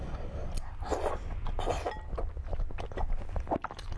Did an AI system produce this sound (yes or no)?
no